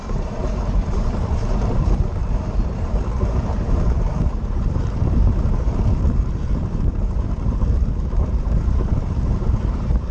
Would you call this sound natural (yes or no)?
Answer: no